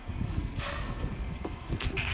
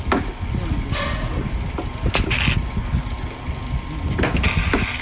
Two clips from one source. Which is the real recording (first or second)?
second